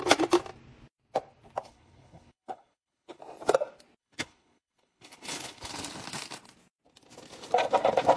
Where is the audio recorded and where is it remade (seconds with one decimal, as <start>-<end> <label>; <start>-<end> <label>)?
0.0-1.6 recorded; 1.6-3.2 remade; 3.2-4.0 recorded; 4.0-5.7 remade; 5.7-8.2 recorded